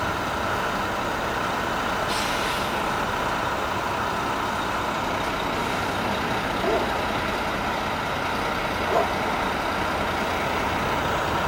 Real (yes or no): yes